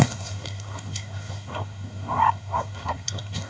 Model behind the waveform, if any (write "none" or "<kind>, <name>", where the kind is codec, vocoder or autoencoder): codec, SNAC